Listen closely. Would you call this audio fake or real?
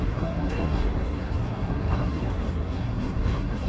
fake